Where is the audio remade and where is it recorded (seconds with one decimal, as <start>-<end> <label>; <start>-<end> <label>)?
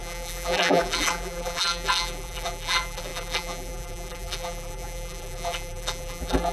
0.0-6.5 remade